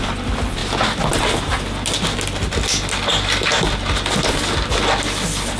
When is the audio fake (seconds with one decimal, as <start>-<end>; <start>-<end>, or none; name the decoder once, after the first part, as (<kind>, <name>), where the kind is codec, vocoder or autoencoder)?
none